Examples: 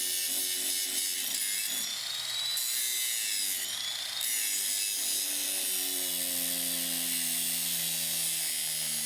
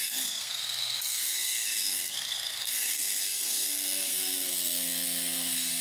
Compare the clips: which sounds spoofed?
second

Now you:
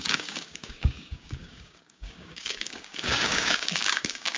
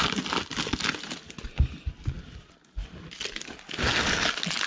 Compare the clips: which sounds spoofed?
first